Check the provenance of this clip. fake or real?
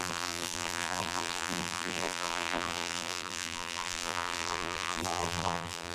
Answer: fake